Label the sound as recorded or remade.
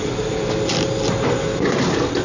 recorded